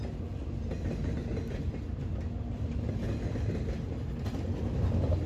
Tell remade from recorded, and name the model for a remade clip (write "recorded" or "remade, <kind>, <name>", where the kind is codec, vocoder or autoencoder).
recorded